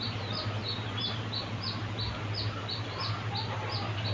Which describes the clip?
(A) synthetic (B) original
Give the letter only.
B